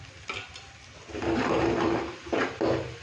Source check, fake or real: real